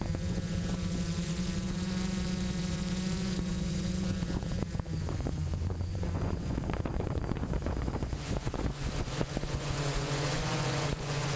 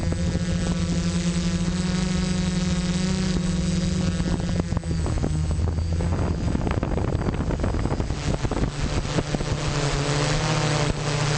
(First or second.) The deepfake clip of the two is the first